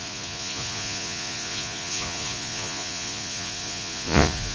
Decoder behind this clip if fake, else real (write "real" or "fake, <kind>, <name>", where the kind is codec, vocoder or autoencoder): fake, vocoder, Vocos